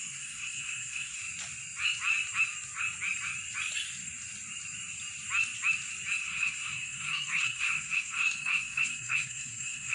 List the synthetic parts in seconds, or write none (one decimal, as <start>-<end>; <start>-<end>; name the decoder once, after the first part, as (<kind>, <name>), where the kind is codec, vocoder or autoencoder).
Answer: 0.0-1.2 (codec, SNAC); 6.2-9.9